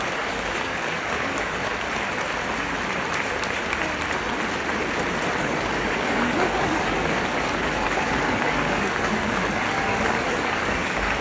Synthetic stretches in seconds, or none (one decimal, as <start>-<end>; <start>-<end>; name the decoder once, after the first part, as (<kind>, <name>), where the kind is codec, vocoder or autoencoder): 0.0-1.7 (codec, DAC); 5.4-11.2